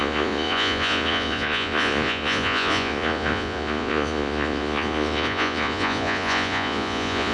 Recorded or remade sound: remade